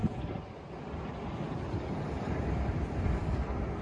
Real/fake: real